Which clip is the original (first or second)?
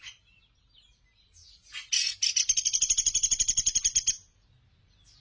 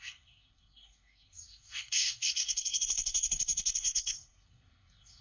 first